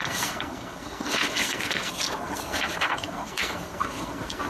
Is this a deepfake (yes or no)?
yes